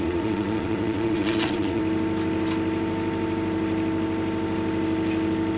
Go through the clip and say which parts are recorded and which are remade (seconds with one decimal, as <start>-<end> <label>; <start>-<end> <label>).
0.0-1.8 remade; 1.8-5.6 recorded